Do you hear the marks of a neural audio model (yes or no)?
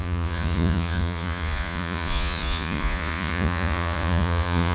yes